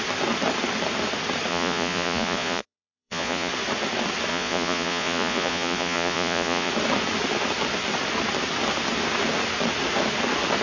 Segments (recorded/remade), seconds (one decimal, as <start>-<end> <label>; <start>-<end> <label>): 0.0-1.5 recorded; 1.5-3.5 remade; 3.5-4.3 recorded; 4.3-6.7 remade; 6.7-10.6 recorded